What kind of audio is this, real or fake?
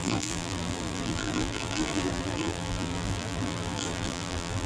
fake